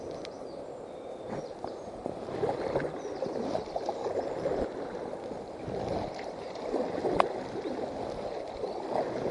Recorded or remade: recorded